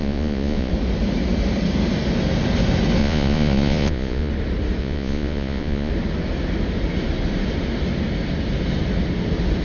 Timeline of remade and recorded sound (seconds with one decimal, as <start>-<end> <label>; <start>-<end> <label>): 0.0-0.7 remade; 0.7-3.0 recorded; 3.0-4.3 remade; 4.3-4.8 recorded; 4.8-5.9 remade; 5.9-9.6 recorded